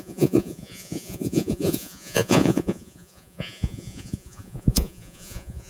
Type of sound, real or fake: fake